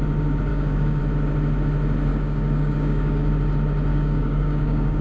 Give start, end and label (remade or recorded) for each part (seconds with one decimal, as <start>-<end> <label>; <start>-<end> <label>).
0.0-0.5 recorded; 0.5-1.0 remade; 1.0-2.1 recorded; 2.1-3.3 remade; 3.3-3.9 recorded; 3.9-5.0 remade

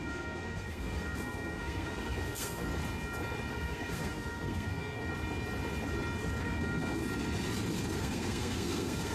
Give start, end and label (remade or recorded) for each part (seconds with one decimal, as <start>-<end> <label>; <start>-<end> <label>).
0.0-2.7 remade; 2.7-3.5 recorded; 3.5-5.1 remade; 5.1-6.4 recorded; 6.4-7.0 remade; 7.0-8.0 recorded; 8.0-9.1 remade

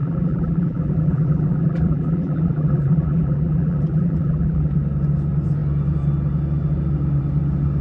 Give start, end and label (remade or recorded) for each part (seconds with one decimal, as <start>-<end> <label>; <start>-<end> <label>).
0.0-4.7 remade; 4.7-7.8 recorded

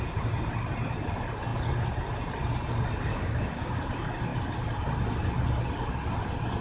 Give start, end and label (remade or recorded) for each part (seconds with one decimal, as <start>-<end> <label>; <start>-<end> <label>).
0.0-3.1 recorded; 3.1-3.8 remade; 3.8-6.6 recorded

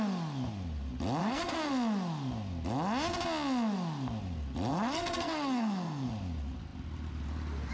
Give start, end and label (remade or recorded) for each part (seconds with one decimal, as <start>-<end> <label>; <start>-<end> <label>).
0.0-1.2 recorded; 1.2-1.7 remade; 1.7-4.7 recorded; 4.7-6.1 remade; 6.1-7.7 recorded

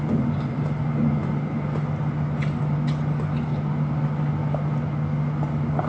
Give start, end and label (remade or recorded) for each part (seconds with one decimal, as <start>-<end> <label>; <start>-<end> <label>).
0.0-5.9 recorded

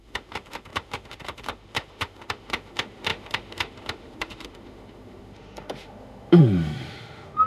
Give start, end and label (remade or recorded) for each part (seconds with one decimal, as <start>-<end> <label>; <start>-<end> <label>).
0.0-7.5 remade